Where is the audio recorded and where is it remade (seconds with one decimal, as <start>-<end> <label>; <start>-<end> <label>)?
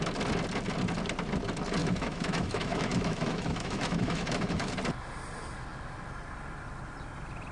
0.0-1.8 recorded; 1.8-4.7 remade; 4.7-7.5 recorded